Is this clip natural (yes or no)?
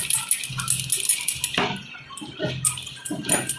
yes